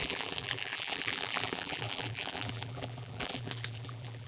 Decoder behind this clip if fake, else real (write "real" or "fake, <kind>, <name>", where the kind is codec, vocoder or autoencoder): fake, vocoder, BigVGAN v2